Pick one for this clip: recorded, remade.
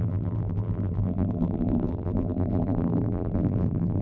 remade